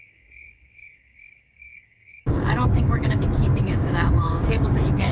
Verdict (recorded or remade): remade